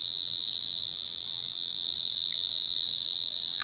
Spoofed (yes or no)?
yes